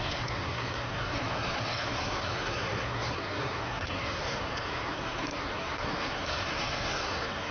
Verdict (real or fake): fake